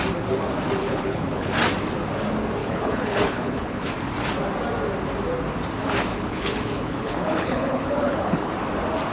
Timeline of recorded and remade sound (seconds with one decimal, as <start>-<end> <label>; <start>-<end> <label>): 0.0-0.8 recorded; 0.8-1.5 remade; 1.5-2.6 recorded; 2.6-3.9 remade; 3.9-6.1 recorded; 6.1-8.5 remade; 8.5-9.1 recorded

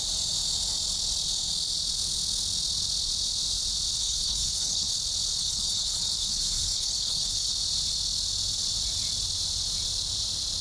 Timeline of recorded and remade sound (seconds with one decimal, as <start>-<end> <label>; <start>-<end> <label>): 0.0-4.0 recorded; 4.0-4.9 remade; 4.9-5.4 recorded; 5.4-7.5 remade; 7.5-10.6 recorded

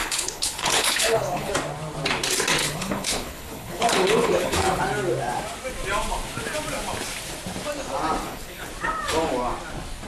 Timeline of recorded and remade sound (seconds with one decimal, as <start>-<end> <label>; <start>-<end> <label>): 0.0-1.5 remade; 1.5-2.6 recorded; 2.6-4.8 remade; 4.8-8.2 recorded; 8.2-8.7 remade; 8.7-10.1 recorded

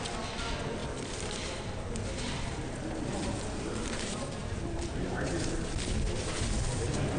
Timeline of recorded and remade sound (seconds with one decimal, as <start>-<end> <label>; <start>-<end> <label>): 0.0-7.2 recorded

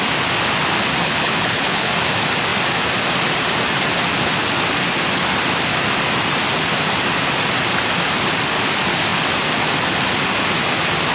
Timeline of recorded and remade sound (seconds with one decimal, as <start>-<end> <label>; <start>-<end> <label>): 0.0-1.0 recorded; 1.0-1.9 remade; 1.9-11.1 recorded